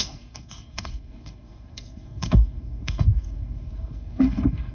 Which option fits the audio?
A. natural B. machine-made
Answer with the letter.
B